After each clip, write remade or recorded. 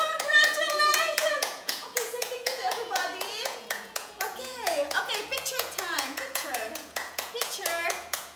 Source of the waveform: remade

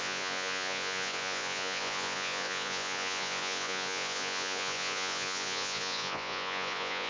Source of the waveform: remade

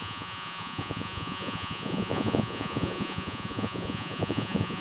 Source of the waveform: remade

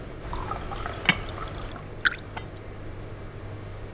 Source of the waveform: recorded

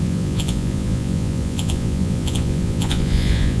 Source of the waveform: remade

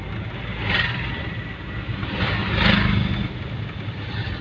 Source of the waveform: recorded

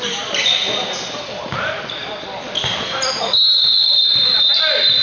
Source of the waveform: recorded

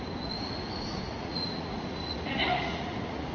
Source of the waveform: remade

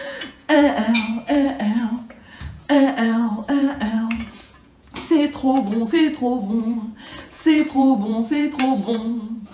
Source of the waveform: remade